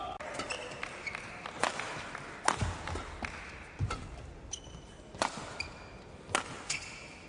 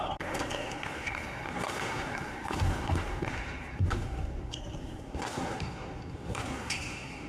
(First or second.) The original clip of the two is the first